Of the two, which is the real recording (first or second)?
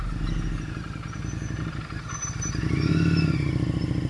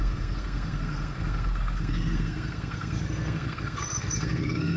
first